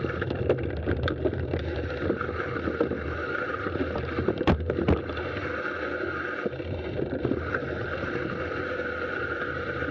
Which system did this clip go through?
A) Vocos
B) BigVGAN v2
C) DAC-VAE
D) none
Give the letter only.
D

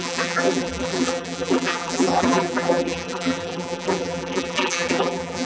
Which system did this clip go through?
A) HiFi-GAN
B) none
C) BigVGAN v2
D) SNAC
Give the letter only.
C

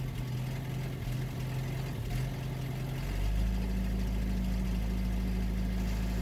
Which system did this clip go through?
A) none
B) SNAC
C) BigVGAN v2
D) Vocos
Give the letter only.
A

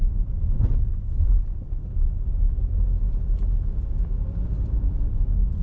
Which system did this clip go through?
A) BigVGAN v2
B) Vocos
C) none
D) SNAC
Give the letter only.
A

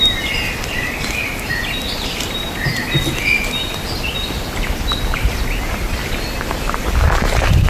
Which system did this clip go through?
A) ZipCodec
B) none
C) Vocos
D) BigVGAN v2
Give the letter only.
B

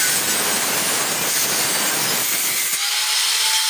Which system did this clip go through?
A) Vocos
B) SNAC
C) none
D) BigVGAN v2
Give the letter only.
C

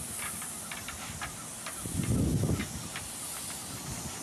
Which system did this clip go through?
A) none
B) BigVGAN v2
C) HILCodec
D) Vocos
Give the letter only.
A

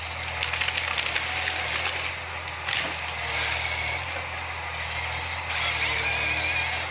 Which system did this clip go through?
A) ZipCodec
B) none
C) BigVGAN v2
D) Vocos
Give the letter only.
B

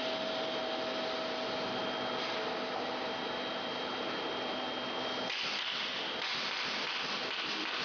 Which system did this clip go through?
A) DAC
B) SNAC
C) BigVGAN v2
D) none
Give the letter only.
D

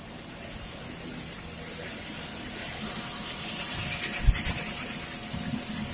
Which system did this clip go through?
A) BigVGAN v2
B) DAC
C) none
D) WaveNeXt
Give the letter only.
C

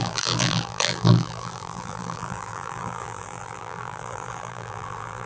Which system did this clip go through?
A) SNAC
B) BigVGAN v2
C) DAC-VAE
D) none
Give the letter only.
B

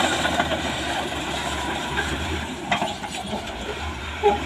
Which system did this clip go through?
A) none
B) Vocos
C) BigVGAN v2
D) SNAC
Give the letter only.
C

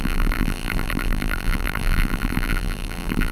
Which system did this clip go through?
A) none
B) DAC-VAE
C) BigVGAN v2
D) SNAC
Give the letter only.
C